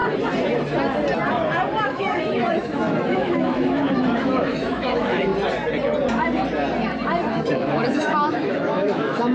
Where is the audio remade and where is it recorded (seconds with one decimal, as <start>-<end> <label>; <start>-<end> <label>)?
0.0-1.8 recorded; 1.8-5.3 remade; 5.3-7.3 recorded; 7.3-9.3 remade